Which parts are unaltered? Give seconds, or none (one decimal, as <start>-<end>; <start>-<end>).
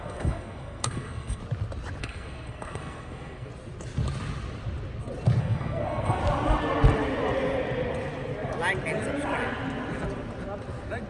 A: 1.4-2.0; 3.5-5.4; 6.2-11.1